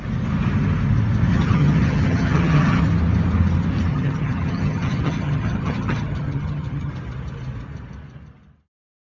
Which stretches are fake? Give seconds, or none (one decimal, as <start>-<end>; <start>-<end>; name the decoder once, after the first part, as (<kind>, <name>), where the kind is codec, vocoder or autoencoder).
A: 1.3-2.8 (vocoder, HiFi-GAN); 3.9-6.9